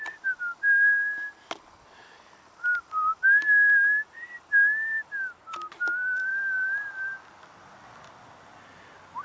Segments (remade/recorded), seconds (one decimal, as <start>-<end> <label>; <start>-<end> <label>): 0.0-9.2 recorded